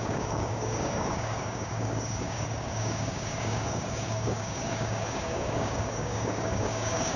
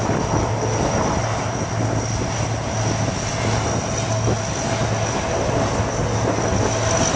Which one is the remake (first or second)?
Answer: first